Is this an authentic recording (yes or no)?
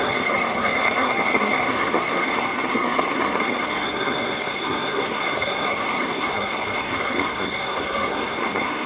no